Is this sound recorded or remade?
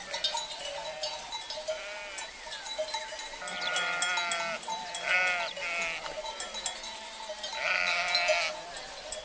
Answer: recorded